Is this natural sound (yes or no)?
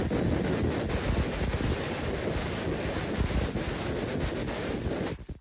yes